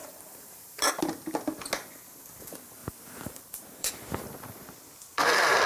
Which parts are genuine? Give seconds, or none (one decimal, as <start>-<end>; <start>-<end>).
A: 0.9-2.8; 3.9-5.7